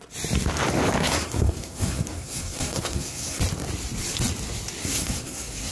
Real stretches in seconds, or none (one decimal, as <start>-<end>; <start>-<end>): 0.0-1.0; 3.4-4.8